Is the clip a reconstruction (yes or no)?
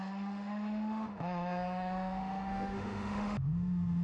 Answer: yes